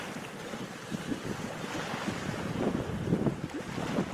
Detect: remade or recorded remade